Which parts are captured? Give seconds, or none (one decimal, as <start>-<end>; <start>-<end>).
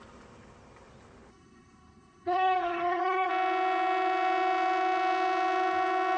0.0-1.3; 3.3-6.2